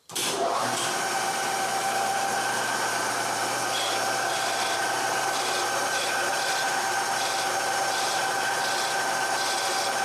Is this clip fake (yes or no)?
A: yes